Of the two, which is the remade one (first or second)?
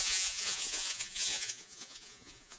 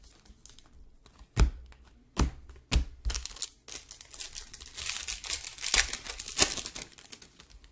first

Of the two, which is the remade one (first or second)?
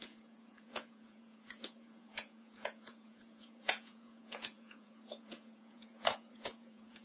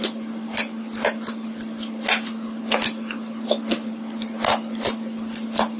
first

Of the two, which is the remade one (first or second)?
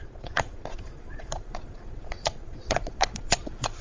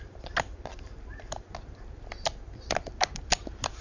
first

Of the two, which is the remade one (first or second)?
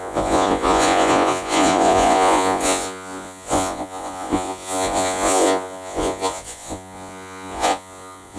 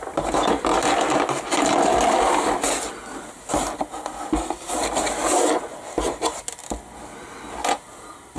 first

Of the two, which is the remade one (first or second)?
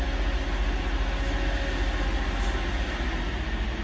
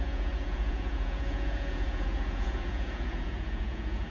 second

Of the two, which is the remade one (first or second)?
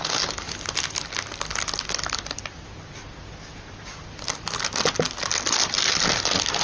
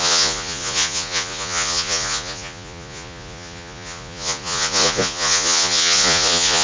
second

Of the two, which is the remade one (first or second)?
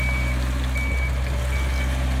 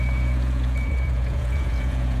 second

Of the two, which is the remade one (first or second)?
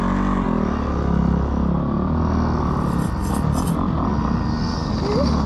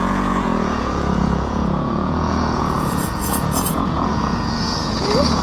second